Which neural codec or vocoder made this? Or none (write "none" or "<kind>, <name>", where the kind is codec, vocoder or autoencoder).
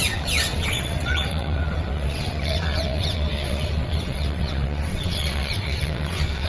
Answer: vocoder, WaveNeXt